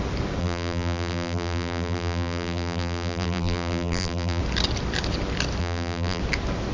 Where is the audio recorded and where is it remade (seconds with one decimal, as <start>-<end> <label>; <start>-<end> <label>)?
0.0-0.4 recorded; 0.4-4.4 remade; 4.4-5.6 recorded; 5.6-6.2 remade; 6.2-6.7 recorded